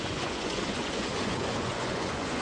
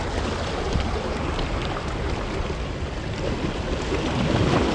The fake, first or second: first